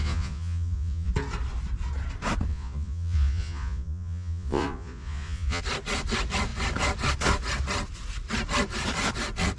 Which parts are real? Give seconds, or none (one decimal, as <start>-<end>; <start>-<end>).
1.1-2.5; 5.6-9.6